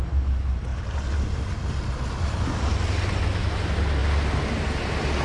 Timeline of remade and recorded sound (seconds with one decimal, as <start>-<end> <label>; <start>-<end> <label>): 0.0-5.2 recorded